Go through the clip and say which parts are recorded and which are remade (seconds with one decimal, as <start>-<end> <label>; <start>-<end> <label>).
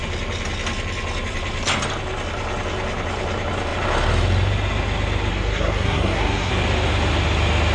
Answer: 0.0-5.3 recorded; 5.3-6.5 remade; 6.5-7.7 recorded